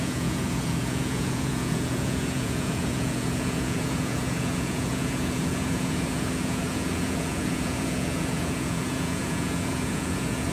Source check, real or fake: fake